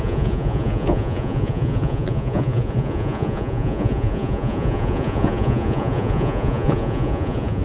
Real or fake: fake